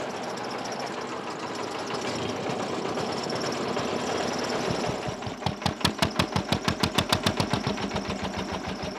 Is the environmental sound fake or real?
real